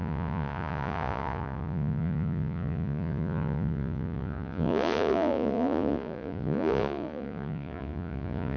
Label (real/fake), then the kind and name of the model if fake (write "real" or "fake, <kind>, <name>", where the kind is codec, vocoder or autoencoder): fake, vocoder, Vocos